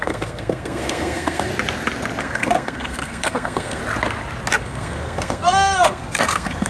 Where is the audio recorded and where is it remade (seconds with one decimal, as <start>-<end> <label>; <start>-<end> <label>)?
0.0-1.5 remade; 1.5-2.2 recorded; 2.2-3.8 remade; 3.8-4.6 recorded; 4.6-6.7 remade